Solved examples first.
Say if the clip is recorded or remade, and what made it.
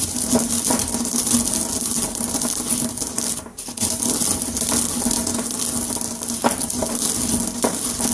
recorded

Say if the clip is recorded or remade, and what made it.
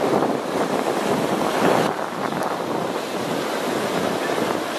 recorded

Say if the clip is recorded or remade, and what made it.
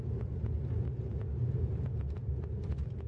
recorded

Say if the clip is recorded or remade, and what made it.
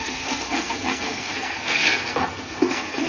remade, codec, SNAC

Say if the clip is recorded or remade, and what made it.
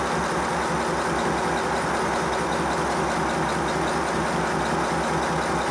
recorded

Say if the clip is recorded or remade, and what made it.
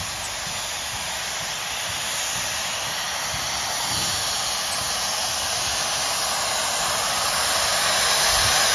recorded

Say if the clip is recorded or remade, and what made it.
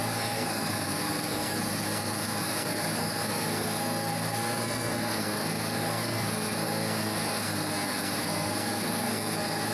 remade, codec, SNAC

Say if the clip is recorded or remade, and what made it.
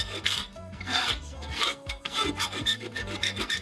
remade, codec, SNAC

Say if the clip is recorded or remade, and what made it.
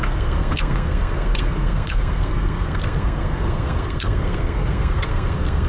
remade, codec, SNAC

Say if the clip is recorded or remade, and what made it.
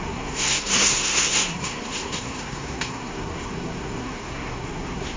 remade, codec, SNAC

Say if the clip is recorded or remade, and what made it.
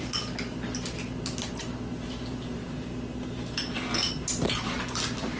recorded